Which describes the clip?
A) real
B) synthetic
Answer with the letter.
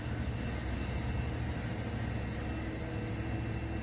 A